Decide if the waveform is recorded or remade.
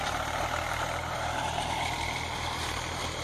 recorded